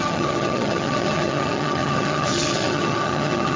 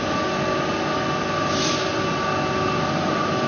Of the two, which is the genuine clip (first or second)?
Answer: second